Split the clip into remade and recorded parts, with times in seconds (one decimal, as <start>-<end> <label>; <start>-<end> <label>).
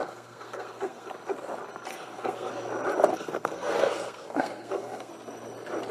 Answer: 0.0-1.1 remade; 1.1-1.9 recorded; 1.9-2.5 remade; 2.5-3.1 recorded; 3.1-5.1 remade; 5.1-5.9 recorded